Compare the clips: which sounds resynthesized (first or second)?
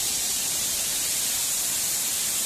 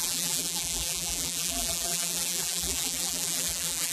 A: second